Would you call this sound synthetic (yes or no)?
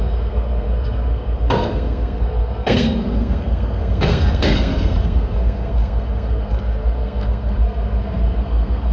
yes